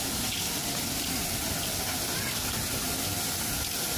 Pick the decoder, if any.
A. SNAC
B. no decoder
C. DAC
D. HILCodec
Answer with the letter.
B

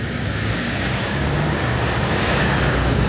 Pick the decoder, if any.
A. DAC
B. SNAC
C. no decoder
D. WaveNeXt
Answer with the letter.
A